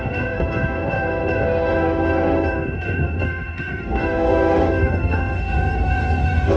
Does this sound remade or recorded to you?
remade